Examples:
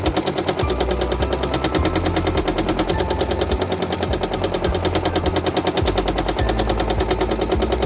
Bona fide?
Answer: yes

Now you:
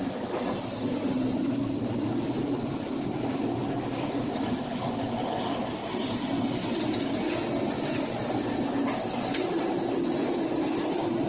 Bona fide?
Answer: yes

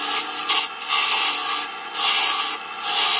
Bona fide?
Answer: yes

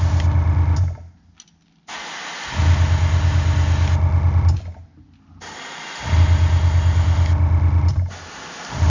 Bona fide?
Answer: yes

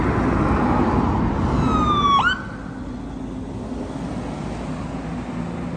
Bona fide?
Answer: yes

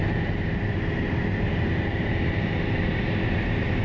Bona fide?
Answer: yes